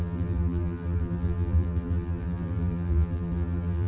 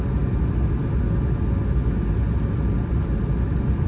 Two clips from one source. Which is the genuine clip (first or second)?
second